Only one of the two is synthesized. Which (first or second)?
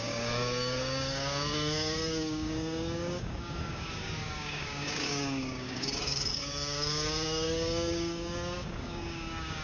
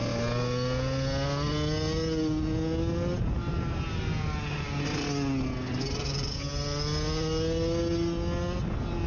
first